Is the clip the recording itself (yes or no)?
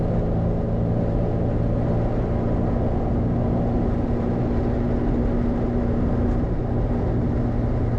yes